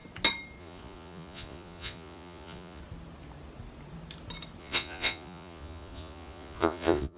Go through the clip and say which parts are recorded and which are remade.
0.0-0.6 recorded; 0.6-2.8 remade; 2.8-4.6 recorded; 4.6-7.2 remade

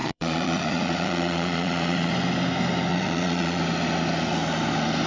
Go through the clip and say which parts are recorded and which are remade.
0.0-2.1 remade; 2.1-2.9 recorded; 2.9-3.6 remade; 3.6-5.1 recorded

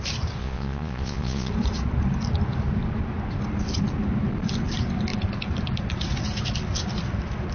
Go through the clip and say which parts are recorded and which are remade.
0.0-0.4 recorded; 0.4-1.5 remade; 1.5-7.5 recorded